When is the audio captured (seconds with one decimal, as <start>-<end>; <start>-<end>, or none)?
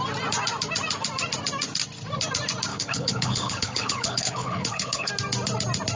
0.0-2.7; 5.1-6.0